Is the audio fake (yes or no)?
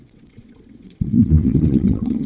yes